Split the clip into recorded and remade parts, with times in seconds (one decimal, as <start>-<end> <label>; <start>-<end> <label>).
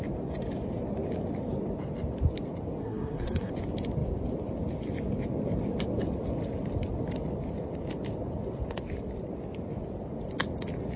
0.0-2.8 recorded; 2.8-3.5 remade; 3.5-11.0 recorded